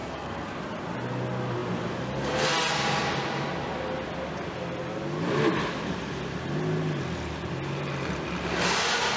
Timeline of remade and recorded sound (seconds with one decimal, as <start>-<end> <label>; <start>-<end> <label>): 0.0-0.6 remade; 0.6-9.2 recorded